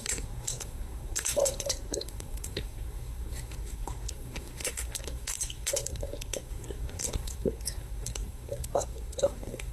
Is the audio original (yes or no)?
no